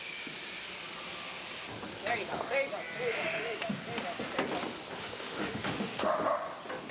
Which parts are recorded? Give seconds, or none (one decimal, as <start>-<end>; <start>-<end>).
0.0-3.1; 3.7-5.0; 6.1-6.9

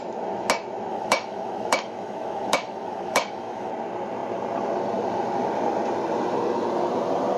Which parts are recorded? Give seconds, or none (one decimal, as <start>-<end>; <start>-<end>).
0.0-0.9; 3.7-7.4